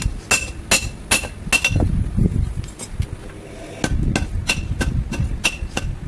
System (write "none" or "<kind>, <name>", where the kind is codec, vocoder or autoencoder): none